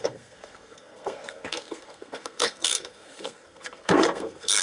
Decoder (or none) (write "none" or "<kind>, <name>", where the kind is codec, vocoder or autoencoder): codec, SNAC